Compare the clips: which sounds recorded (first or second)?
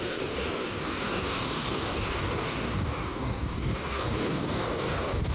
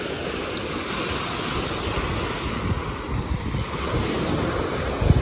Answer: second